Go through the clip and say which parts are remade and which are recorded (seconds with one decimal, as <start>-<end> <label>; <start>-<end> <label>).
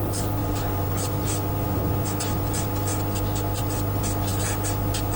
0.0-0.4 recorded; 0.4-1.2 remade; 1.2-5.2 recorded